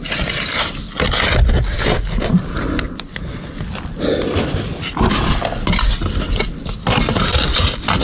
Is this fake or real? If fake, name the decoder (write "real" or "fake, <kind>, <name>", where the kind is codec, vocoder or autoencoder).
real